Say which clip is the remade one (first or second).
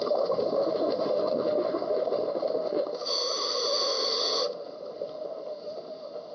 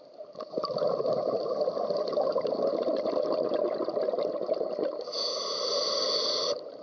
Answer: first